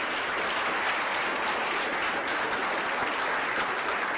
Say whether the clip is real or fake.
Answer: real